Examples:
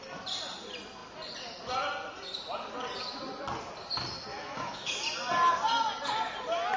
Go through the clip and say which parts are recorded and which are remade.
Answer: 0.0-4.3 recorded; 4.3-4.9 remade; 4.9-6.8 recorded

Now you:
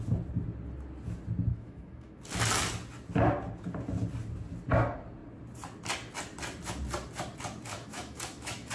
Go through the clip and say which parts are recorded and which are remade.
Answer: 0.0-1.5 recorded; 1.5-2.2 remade; 2.2-7.7 recorded; 7.7-8.7 remade

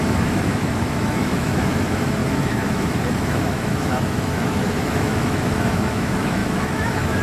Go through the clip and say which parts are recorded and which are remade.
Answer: 0.0-7.2 remade

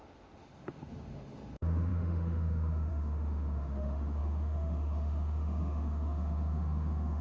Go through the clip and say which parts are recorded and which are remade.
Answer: 0.0-7.2 remade

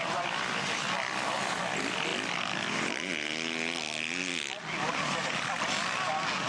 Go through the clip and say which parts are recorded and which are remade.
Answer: 0.0-6.5 recorded

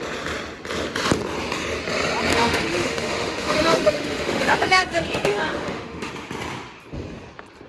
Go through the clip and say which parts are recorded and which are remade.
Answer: 0.0-2.3 recorded; 2.3-6.1 remade; 6.1-7.7 recorded

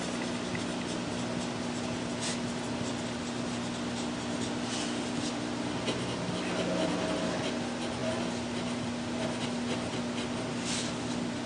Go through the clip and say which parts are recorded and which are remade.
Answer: 0.0-11.5 recorded

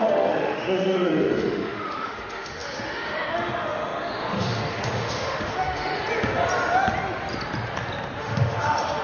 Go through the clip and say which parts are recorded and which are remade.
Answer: 0.0-6.0 remade; 6.0-8.2 recorded; 8.2-9.0 remade